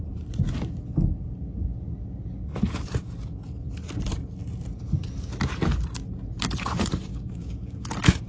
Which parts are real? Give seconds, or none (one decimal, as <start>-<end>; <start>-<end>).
0.0-7.1; 7.9-8.3

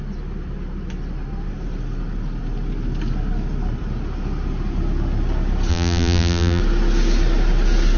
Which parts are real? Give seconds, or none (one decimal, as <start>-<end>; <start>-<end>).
0.0-5.7; 6.6-8.0

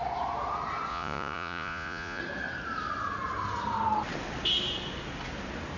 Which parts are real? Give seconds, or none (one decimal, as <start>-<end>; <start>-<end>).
0.0-0.9; 2.2-5.8

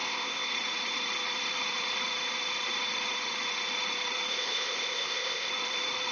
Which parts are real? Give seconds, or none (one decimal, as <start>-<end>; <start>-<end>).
0.5-4.3; 5.5-6.1

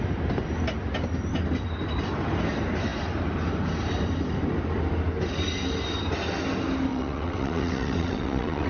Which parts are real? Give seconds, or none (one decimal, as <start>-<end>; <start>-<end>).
0.0-6.9

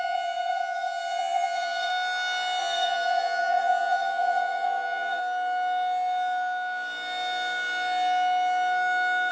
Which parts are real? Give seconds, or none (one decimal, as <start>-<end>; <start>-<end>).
1.9-2.6; 5.2-9.3

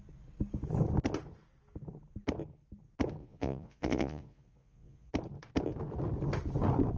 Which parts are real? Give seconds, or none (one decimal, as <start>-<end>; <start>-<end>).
0.0-3.2; 5.1-7.0

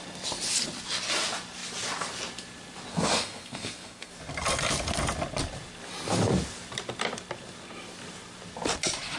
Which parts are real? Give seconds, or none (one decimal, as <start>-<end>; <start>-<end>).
0.0-2.9; 4.1-9.2